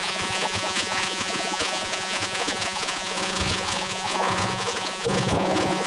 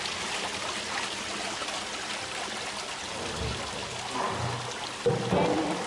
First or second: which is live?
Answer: second